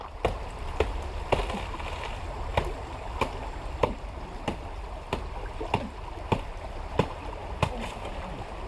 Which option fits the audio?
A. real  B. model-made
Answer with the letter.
A